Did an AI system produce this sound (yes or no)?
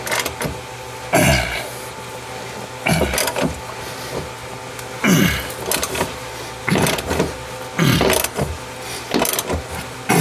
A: no